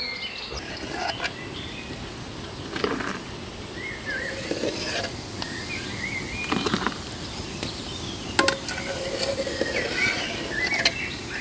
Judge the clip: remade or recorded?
recorded